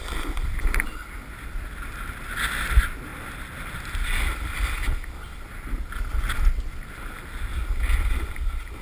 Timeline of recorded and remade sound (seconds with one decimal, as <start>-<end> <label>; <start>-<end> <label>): 0.0-8.8 recorded